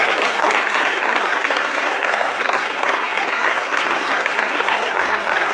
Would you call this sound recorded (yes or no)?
no